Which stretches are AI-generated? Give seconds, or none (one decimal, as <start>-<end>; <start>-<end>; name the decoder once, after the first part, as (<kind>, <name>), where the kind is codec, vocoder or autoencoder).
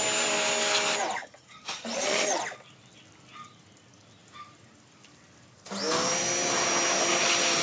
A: 1.2-2.4 (vocoder, HiFi-GAN)